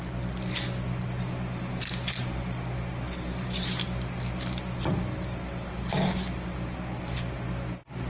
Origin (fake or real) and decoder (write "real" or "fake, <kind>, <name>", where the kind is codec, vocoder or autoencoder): real